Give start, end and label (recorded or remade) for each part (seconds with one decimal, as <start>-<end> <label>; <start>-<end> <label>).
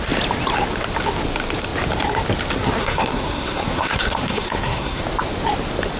0.0-2.8 recorded; 2.8-5.0 remade; 5.0-6.0 recorded